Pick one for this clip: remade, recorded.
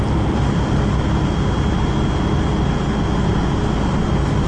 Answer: recorded